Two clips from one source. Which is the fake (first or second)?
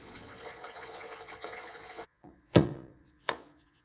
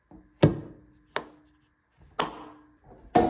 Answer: first